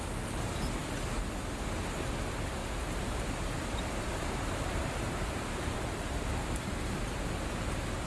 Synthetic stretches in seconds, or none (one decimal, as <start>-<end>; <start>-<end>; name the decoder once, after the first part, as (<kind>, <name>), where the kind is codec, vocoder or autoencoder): 2.6-7.1 (vocoder, BigVGAN v2)